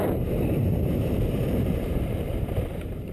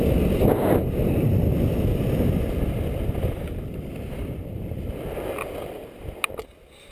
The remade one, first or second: first